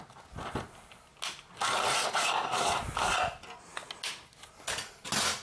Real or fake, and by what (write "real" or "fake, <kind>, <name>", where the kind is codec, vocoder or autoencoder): real